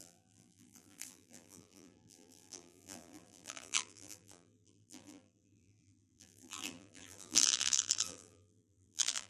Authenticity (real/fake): fake